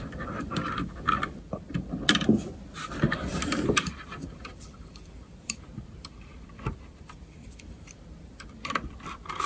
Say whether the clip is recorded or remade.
remade